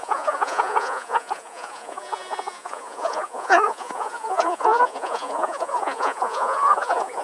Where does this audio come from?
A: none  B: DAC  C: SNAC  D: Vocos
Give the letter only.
D